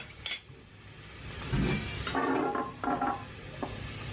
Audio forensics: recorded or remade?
recorded